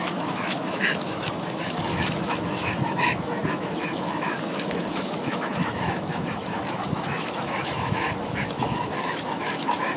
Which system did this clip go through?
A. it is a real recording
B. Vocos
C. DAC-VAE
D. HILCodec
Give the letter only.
C